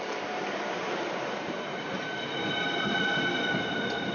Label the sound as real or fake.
fake